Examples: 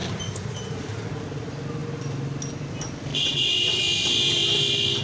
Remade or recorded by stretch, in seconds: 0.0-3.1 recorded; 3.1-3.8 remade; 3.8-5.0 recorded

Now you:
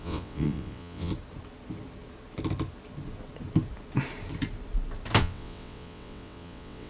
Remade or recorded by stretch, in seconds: 0.0-1.1 remade; 1.1-5.2 recorded; 5.2-6.9 remade

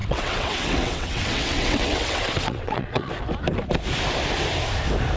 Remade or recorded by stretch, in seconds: 0.0-3.1 remade; 3.1-5.2 recorded